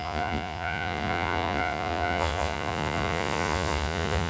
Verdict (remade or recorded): remade